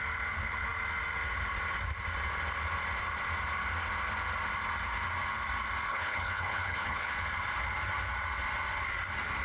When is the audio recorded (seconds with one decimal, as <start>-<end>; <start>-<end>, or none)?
0.0-5.9; 7.1-9.4